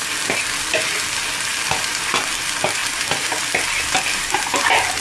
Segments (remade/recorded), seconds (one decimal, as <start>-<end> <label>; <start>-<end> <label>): 0.0-5.0 recorded